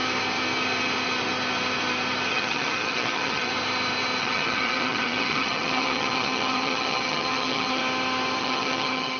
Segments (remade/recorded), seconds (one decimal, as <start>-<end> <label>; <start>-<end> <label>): 0.0-2.3 recorded; 2.3-3.5 remade; 3.5-4.2 recorded; 4.2-7.8 remade; 7.8-8.4 recorded; 8.4-9.2 remade